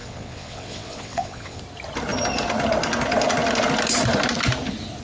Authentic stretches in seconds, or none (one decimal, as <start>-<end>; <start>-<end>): 1.6-5.0